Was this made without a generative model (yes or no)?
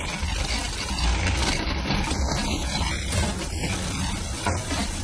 yes